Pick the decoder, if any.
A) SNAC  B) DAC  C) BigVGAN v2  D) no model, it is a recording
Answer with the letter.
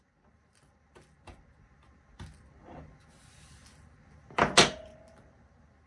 D